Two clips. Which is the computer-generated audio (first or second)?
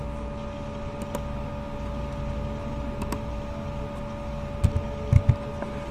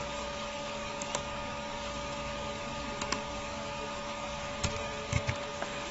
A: second